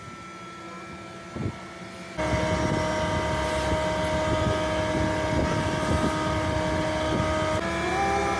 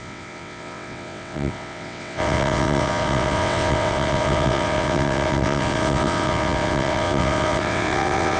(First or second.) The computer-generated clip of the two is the second